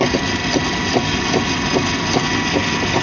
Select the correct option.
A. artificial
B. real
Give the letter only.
B